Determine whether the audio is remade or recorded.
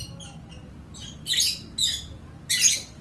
recorded